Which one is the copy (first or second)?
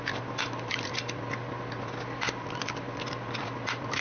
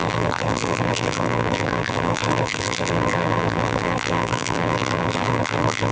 second